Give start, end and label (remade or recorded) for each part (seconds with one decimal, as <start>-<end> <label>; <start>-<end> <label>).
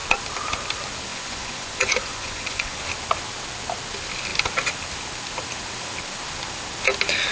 0.0-1.1 recorded; 1.1-2.8 remade; 2.8-7.3 recorded